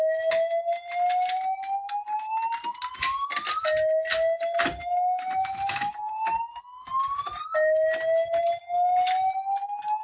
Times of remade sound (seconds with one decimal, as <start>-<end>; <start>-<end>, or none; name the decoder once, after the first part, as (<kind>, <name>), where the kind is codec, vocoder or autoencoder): 4.8-5.9 (autoencoder, DAC-VAE)